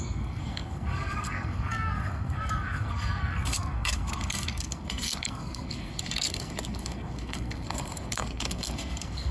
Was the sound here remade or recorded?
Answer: remade